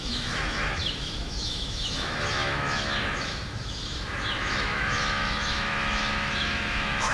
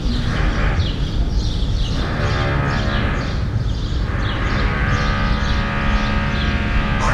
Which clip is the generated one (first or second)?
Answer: first